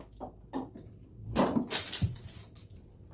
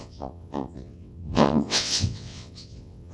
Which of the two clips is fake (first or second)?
second